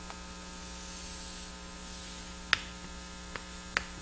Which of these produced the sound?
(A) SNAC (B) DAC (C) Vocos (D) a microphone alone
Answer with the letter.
D